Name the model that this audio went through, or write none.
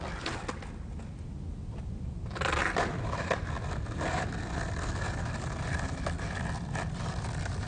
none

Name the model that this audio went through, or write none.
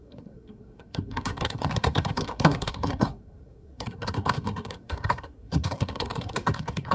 codec, SNAC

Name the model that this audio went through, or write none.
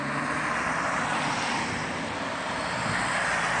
none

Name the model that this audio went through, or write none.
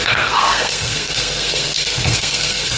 codec, SNAC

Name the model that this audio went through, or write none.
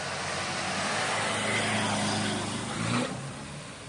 none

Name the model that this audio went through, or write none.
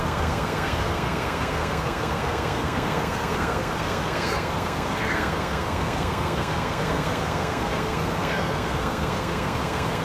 codec, SNAC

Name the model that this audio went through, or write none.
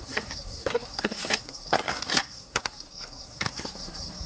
codec, SNAC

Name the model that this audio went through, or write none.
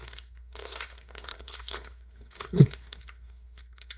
codec, SNAC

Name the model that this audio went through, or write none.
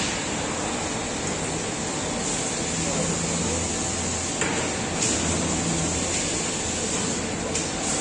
none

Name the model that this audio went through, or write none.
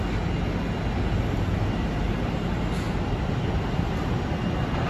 none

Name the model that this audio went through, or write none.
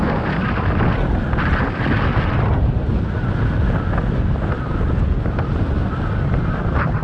none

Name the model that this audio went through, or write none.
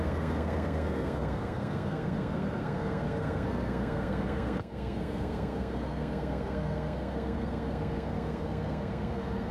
codec, SNAC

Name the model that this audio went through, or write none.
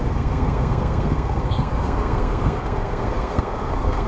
codec, SNAC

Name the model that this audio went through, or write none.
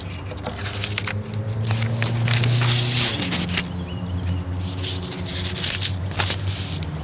none